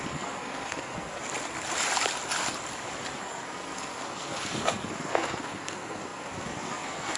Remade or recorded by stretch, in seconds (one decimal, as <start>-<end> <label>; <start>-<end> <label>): 0.0-1.2 remade; 1.2-3.2 recorded; 3.2-7.2 remade